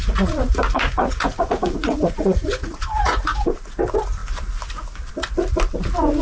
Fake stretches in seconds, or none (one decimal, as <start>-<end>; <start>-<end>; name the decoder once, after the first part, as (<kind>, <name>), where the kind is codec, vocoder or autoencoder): 0.0-3.6 (vocoder, Vocos)